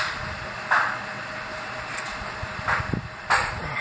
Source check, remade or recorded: recorded